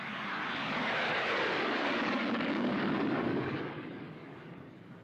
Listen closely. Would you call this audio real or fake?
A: fake